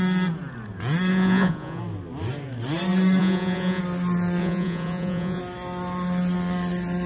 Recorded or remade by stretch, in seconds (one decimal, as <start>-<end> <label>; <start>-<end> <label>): 0.0-1.1 recorded; 1.1-1.8 remade; 1.8-3.2 recorded; 3.2-3.8 remade; 3.8-4.4 recorded; 4.4-5.4 remade; 5.4-7.1 recorded